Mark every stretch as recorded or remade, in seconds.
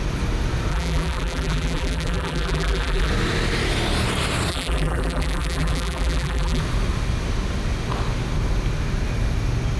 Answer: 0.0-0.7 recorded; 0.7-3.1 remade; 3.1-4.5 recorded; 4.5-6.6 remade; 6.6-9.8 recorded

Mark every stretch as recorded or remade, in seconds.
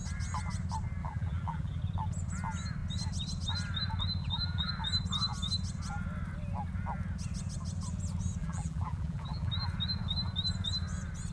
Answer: 0.0-1.0 recorded; 1.0-1.8 remade; 1.8-4.2 recorded; 4.2-4.7 remade; 4.7-8.4 recorded; 8.4-9.5 remade; 9.5-11.3 recorded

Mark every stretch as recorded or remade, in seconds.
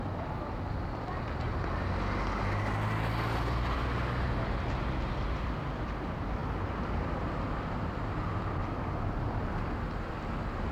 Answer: 0.0-8.6 recorded; 8.6-10.2 remade; 10.2-10.7 recorded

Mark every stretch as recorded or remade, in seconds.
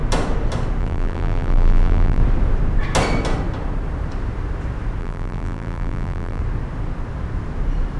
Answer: 0.0-0.8 recorded; 0.8-2.2 remade; 2.2-5.0 recorded; 5.0-6.4 remade; 6.4-8.0 recorded